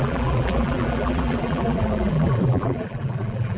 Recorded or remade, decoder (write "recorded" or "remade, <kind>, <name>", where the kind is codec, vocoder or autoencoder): remade, vocoder, BigVGAN v2